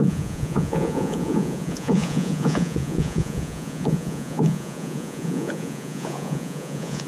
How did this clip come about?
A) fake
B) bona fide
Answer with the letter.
A